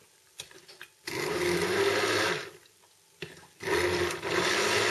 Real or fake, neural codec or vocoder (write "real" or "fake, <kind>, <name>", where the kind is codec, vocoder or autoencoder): real